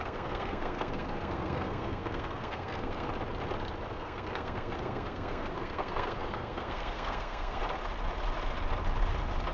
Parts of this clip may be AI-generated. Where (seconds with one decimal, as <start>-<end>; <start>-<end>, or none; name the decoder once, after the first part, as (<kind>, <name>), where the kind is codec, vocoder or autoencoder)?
0.0-3.1 (codec, SNAC); 3.9-7.6